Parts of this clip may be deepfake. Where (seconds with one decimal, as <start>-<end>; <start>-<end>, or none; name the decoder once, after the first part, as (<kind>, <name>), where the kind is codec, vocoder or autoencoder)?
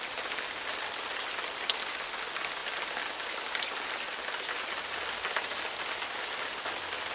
none